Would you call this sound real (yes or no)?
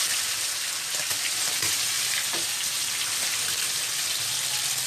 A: yes